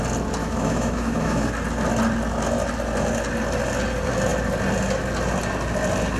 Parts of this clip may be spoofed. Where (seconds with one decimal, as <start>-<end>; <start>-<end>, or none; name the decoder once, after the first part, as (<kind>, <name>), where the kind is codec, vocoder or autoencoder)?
0.4-1.5 (autoencoder, DAC-VAE)